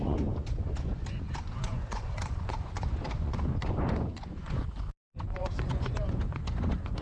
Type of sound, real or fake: fake